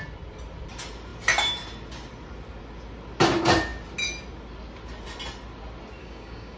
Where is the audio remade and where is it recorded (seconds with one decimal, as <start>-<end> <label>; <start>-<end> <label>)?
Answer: 0.0-6.0 recorded; 6.0-6.6 remade